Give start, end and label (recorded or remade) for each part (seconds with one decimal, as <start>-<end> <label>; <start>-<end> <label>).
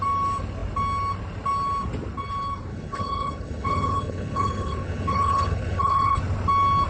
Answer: 0.0-2.7 recorded; 2.7-6.2 remade; 6.2-6.9 recorded